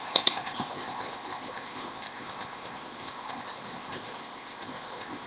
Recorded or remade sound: remade